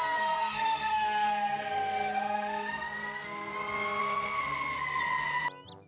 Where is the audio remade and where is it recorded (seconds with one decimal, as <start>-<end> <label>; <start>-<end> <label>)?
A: 0.0-3.5 remade; 3.5-4.0 recorded; 4.0-5.0 remade; 5.0-5.9 recorded